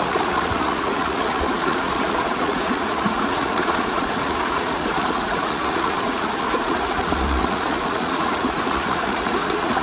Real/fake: fake